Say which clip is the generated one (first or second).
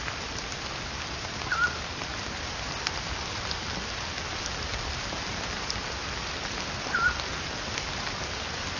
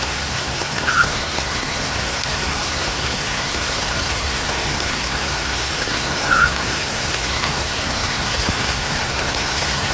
second